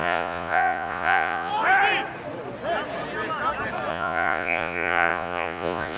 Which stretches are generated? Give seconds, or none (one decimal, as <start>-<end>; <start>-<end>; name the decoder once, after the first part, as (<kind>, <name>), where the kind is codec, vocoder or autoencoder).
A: 0.0-1.5 (vocoder, Vocos); 3.9-6.0

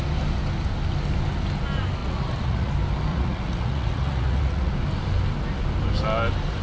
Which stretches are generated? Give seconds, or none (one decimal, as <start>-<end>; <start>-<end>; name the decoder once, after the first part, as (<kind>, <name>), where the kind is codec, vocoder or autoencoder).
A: 2.0-2.7 (vocoder, Vocos); 3.1-4.7

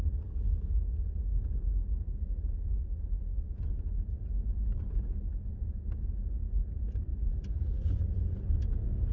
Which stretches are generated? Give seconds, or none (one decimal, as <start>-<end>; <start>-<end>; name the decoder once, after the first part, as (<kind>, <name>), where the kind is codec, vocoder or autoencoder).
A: 7.1-9.1 (vocoder, Vocos)

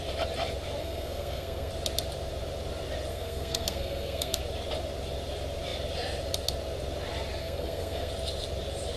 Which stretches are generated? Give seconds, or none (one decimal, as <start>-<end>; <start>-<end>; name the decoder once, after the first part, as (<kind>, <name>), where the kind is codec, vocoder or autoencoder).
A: 0.8-1.7 (codec, SNAC); 3.1-4.4; 7.4-8.1